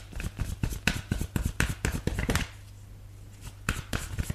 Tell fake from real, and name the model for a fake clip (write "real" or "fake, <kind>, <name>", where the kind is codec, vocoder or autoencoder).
real